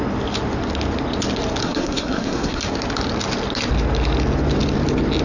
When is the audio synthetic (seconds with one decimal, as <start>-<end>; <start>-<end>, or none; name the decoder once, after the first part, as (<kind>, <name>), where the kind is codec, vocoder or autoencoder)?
1.6-2.6 (codec, SNAC)